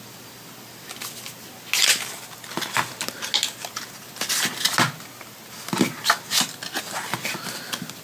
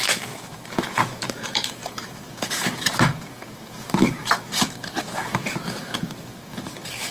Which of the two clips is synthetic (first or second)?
second